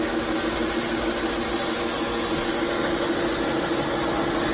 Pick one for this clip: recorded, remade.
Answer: recorded